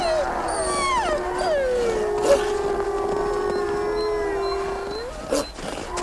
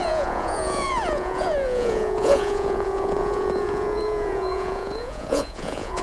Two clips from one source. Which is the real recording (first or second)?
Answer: first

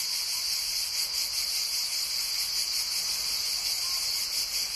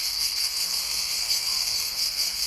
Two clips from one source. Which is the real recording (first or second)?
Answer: first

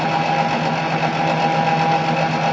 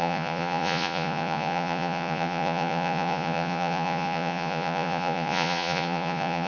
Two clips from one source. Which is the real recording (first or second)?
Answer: first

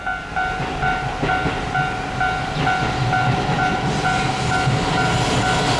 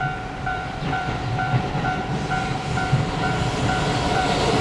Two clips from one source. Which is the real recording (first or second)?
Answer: first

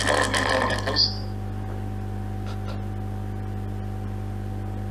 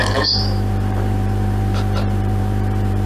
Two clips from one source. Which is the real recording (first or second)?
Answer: first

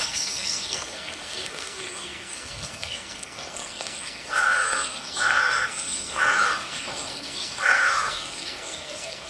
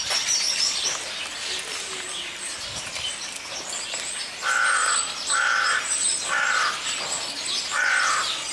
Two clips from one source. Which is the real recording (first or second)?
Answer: second